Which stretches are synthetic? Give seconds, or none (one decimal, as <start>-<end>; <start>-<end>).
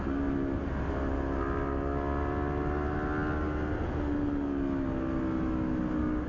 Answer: none